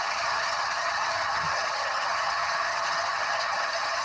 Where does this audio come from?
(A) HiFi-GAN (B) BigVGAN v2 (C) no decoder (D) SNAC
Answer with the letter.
A